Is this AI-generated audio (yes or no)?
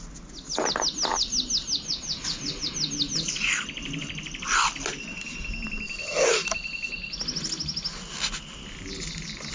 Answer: no